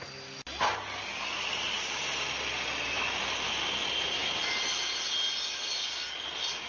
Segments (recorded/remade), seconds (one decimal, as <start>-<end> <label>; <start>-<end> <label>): 0.0-6.7 recorded